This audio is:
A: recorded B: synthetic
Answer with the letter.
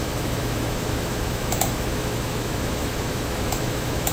B